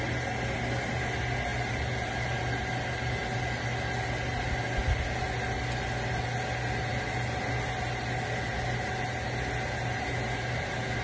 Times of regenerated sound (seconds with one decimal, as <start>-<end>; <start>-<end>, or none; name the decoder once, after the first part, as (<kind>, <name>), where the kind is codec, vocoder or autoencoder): none